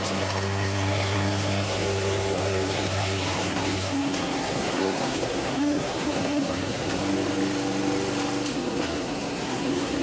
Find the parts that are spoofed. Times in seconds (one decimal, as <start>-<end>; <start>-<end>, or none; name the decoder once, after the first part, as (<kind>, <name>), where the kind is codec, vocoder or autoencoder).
0.0-7.0 (codec, SNAC); 8.5-10.0